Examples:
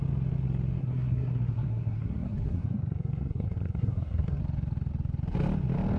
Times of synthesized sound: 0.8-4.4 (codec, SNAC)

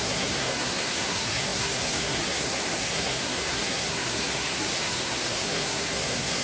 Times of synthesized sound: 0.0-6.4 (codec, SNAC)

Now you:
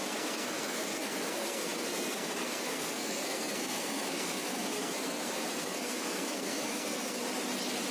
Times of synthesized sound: 0.0-7.2 (codec, SNAC)